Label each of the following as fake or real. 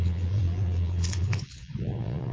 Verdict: fake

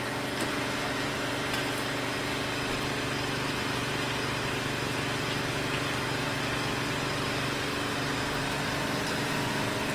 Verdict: real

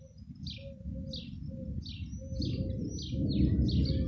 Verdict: real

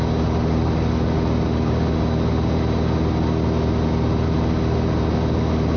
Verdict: real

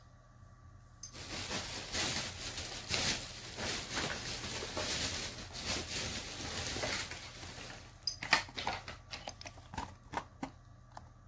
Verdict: real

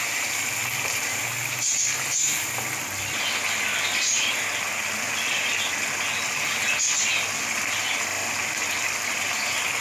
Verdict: real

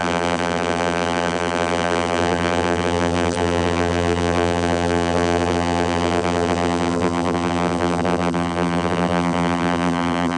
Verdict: fake